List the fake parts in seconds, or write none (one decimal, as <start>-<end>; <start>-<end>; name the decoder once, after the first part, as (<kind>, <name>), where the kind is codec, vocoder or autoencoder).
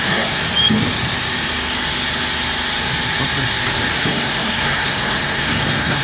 0.0-0.4 (codec, SNAC); 4.0-6.0